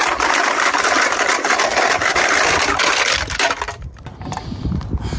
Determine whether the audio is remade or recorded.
recorded